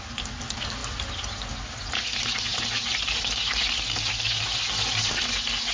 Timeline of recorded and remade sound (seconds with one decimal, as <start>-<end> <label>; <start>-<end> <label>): 0.0-5.7 recorded